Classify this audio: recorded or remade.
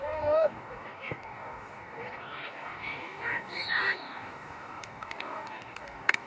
remade